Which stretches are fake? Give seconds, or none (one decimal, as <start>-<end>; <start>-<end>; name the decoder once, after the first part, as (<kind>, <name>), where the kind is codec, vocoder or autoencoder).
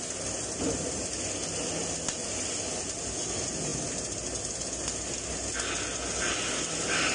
none